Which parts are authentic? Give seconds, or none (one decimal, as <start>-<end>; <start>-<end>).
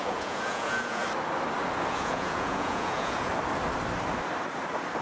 1.0-1.9; 3.3-5.0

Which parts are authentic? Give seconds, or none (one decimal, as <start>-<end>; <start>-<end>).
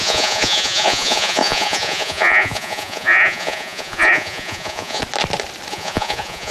5.0-5.7